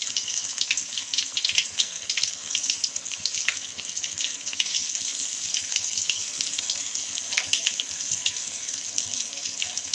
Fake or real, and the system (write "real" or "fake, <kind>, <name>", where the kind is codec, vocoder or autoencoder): fake, codec, SNAC